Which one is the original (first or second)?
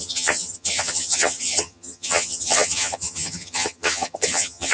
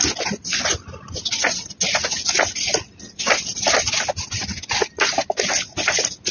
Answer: second